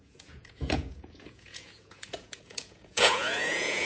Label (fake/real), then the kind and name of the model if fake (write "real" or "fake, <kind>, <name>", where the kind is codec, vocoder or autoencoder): fake, vocoder, Vocos